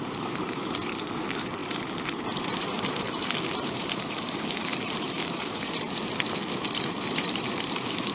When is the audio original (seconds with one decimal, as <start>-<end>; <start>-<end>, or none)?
none